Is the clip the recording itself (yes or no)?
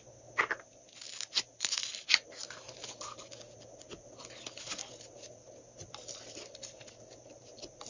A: yes